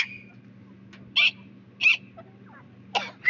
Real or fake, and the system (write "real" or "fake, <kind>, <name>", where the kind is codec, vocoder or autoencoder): real